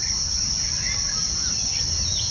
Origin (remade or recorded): recorded